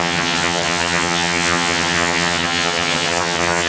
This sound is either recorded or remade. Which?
remade